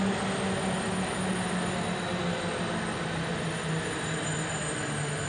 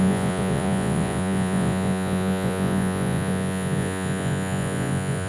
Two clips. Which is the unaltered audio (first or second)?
first